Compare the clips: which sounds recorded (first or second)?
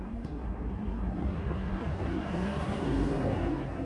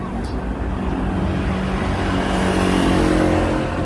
second